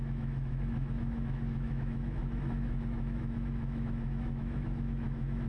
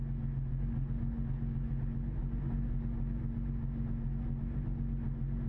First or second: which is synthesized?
first